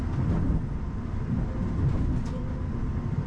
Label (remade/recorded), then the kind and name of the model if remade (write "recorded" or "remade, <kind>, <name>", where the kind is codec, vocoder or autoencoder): recorded